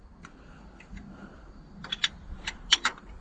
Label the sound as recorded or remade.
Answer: recorded